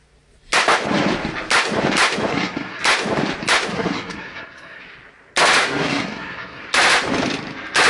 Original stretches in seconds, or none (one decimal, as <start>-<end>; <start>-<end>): 0.0-2.3; 2.8-3.7; 4.8-5.6; 6.6-7.9